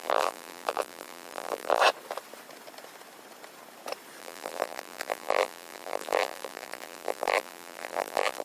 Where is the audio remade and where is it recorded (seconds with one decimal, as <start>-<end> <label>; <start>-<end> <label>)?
0.0-1.8 remade; 1.8-4.2 recorded; 4.2-8.4 remade